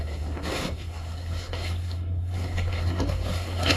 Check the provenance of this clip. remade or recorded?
remade